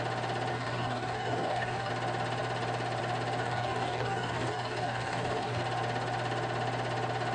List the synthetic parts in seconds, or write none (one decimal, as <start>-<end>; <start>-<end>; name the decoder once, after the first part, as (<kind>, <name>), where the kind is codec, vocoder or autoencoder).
0.5-1.9 (codec, DAC); 3.4-5.6